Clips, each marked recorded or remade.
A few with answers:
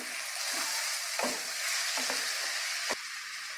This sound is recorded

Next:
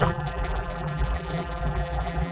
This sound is remade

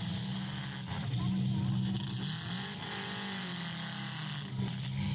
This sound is recorded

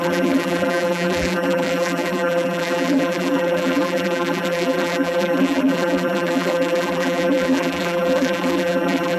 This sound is remade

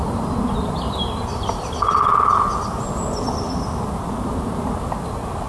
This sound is recorded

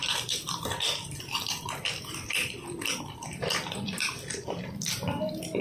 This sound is remade